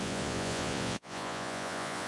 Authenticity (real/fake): fake